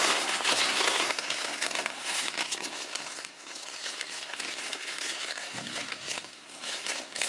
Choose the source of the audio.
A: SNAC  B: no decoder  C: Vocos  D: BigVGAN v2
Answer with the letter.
A